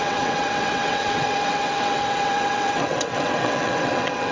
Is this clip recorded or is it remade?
remade